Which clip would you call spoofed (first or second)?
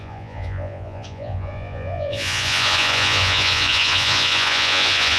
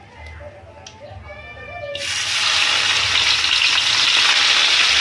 first